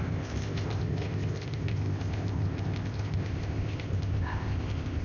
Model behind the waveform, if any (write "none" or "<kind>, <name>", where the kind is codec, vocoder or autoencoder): codec, ZipCodec